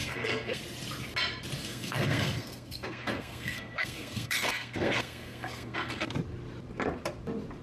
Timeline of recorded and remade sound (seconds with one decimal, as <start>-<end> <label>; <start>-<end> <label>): 0.0-0.6 remade; 0.6-1.6 recorded; 1.6-6.1 remade; 6.1-7.6 recorded